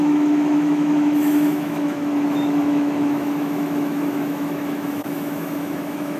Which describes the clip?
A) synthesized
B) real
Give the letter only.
A